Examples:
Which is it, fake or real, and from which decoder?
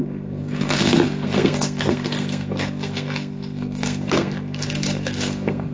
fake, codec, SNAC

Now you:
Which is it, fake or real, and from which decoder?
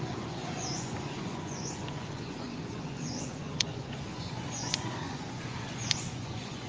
fake, vocoder, Vocos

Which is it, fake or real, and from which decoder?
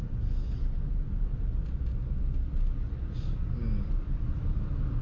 real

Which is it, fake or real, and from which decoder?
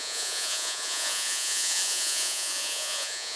fake, vocoder, Vocos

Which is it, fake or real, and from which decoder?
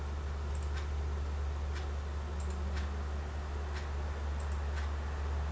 real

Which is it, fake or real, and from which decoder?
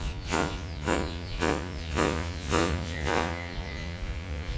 fake, vocoder, Vocos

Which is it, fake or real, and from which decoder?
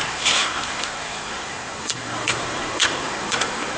fake, codec, SNAC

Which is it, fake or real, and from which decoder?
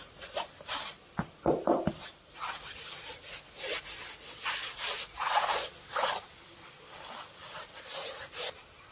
real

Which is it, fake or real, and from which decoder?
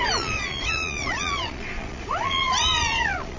fake, vocoder, Vocos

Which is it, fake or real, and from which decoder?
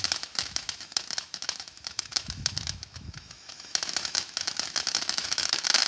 fake, autoencoder, DAC-VAE